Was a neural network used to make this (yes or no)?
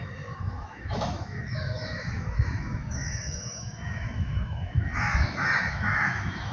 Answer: yes